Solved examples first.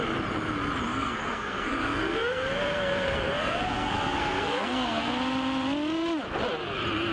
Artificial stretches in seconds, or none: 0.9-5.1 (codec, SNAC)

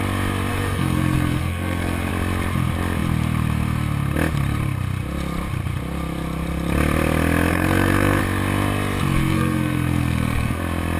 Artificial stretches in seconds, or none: 0.5-2.1 (codec, SNAC); 7.5-8.2; 9.2-10.6

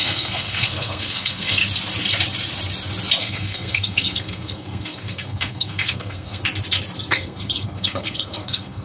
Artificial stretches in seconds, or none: 0.0-1.6 (codec, SNAC); 3.2-6.4; 7.1-8.8

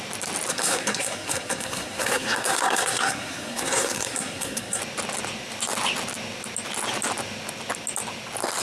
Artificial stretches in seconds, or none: 0.5-4.8 (codec, SNAC)

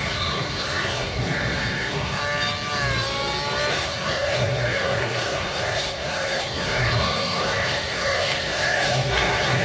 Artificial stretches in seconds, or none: 0.0-2.2 (codec, SNAC); 3.7-9.6

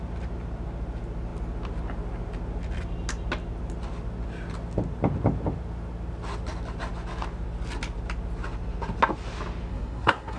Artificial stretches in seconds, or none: 9.7-10.4 (codec, SNAC)

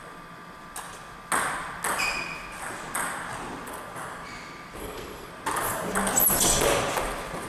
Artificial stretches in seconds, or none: 4.8-5.3 (codec, SNAC)